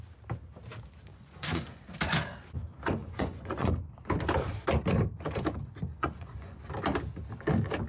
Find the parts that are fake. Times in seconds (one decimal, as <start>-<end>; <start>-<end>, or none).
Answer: 1.1-1.8; 3.0-3.7; 5.9-6.6